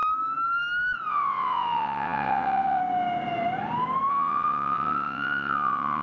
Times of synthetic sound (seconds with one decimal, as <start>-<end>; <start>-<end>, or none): 1.1-2.8; 4.1-6.0